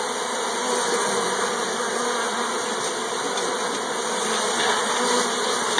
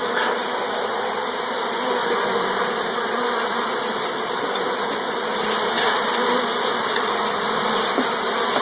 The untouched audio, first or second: first